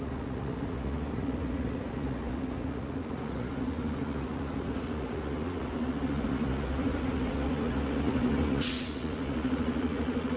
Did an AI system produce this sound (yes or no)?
yes